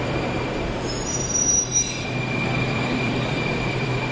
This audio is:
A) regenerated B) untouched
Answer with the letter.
A